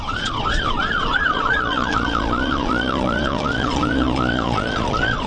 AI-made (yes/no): yes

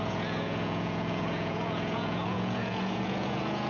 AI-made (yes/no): yes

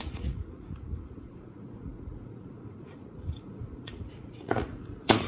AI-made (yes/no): yes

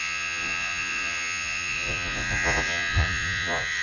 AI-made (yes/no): yes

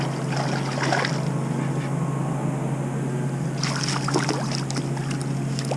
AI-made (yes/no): no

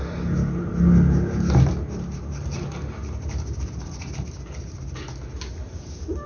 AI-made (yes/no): no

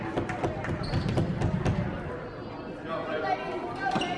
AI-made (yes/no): no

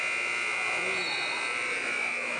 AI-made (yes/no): no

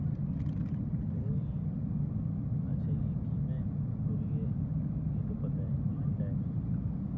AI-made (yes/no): no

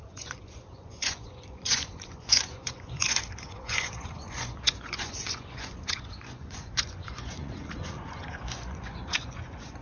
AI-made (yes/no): yes